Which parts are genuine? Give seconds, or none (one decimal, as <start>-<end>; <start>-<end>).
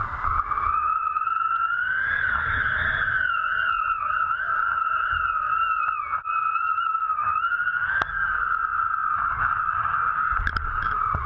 0.0-11.3